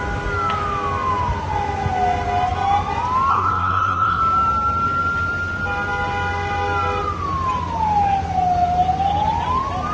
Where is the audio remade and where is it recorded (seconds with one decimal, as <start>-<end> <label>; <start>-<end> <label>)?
0.0-3.3 recorded; 3.3-4.2 remade; 4.2-9.9 recorded